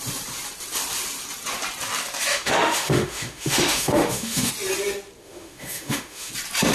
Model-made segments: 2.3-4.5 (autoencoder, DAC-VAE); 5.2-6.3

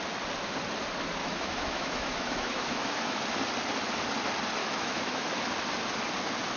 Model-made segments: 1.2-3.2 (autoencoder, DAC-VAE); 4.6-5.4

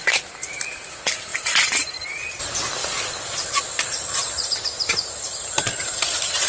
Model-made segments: 1.3-2.4 (vocoder, BigVGAN v2); 2.8-3.6; 4.2-6.1

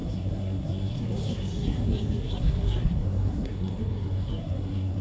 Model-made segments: 0.0-5.0 (codec, SNAC)